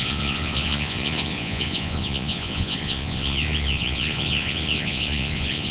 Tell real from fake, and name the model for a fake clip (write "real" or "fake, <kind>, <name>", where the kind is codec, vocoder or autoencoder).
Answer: fake, vocoder, Vocos